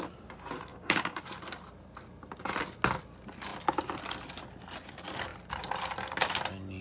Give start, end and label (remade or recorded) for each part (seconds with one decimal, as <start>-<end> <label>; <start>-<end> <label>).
0.0-0.7 recorded; 0.7-1.2 remade; 1.2-6.8 recorded